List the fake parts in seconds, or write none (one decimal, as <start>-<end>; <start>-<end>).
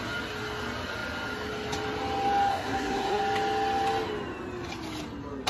2.5-3.2